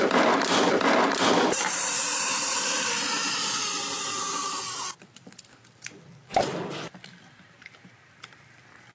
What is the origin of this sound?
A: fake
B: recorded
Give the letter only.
A